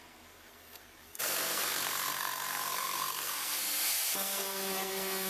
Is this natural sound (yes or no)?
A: no